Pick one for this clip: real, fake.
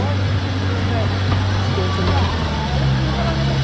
real